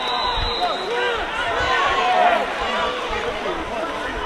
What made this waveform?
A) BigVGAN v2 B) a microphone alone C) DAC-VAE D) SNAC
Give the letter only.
B